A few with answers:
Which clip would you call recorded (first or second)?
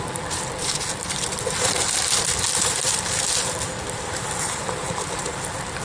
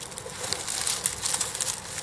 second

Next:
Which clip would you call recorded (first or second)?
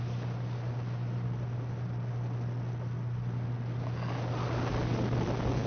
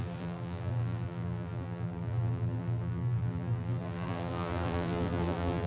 first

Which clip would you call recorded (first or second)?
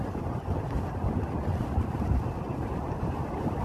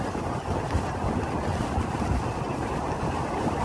second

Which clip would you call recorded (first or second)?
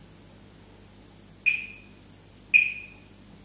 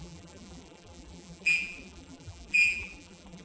first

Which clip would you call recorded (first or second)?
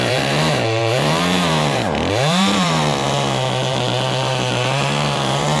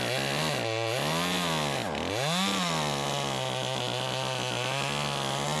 second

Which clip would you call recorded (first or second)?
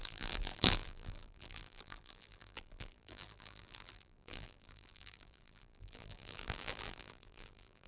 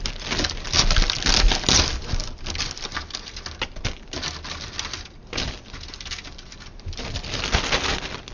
second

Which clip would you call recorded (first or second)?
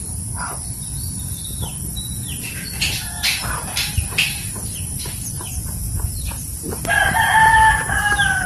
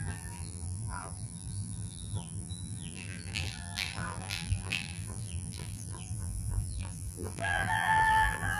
first